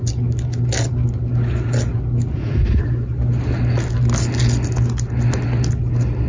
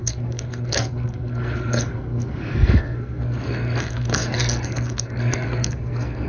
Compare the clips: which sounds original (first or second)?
first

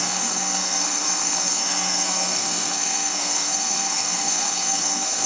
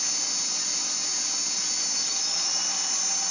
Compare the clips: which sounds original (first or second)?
second